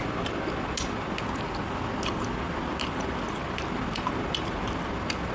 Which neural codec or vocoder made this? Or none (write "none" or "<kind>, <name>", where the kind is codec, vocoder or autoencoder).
none